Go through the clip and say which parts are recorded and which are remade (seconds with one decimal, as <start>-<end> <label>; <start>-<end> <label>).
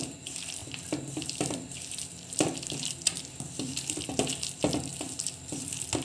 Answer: 0.0-0.6 recorded; 0.6-3.9 remade; 3.9-6.0 recorded